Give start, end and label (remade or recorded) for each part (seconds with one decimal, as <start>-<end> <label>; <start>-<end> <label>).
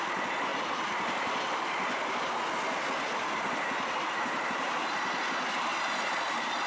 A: 0.0-6.7 recorded